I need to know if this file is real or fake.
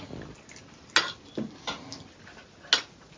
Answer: real